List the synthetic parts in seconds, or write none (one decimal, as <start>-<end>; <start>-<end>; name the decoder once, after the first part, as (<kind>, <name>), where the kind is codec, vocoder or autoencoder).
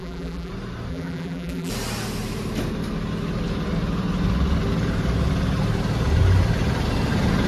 0.0-0.5 (vocoder, BigVGAN v2); 0.9-1.7